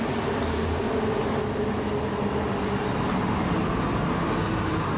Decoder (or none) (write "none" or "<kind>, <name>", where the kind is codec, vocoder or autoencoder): none